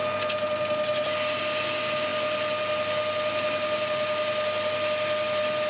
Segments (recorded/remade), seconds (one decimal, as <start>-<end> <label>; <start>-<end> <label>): 0.0-5.7 recorded